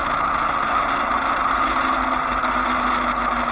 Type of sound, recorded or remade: recorded